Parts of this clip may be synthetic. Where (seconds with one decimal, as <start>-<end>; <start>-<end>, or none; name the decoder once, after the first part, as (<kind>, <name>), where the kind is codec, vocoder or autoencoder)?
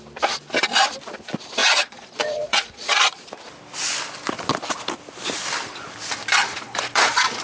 1.6-3.3 (vocoder, Vocos); 6.4-7.4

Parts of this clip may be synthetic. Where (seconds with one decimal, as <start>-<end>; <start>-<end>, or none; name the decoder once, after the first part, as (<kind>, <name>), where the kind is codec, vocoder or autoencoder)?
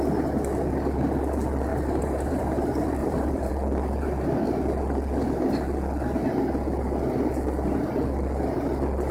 1.7-2.4 (vocoder, BigVGAN v2); 3.0-3.5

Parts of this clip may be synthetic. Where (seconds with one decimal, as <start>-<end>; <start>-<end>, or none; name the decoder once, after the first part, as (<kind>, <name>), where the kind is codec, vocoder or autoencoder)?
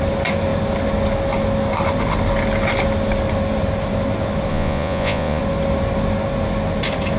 4.5-5.4 (vocoder, Vocos)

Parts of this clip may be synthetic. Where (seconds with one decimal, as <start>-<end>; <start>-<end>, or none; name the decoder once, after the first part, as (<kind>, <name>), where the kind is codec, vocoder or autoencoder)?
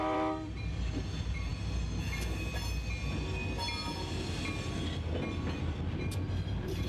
0.0-1.5 (vocoder, BigVGAN v2); 5.6-6.9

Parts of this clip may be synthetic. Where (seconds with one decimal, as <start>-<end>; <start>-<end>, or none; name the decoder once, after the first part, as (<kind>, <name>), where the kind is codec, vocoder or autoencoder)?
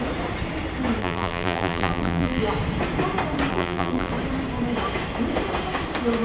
1.0-2.4 (vocoder, BigVGAN v2); 3.5-4.1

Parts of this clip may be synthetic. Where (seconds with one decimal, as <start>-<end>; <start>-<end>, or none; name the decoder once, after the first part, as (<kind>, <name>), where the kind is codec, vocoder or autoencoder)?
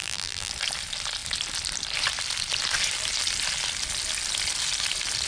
0.0-0.5 (vocoder, BigVGAN v2)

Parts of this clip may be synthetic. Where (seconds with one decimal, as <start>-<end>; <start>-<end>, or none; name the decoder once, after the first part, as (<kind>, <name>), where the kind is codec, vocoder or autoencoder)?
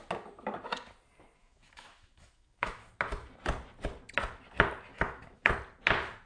1.4-2.9 (autoencoder, DAC-VAE); 4.9-5.5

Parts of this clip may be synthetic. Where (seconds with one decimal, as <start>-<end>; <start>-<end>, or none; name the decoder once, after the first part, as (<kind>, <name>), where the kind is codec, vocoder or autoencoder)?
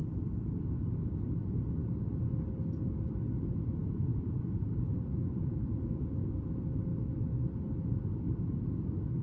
4.1-6.0 (vocoder, BigVGAN v2)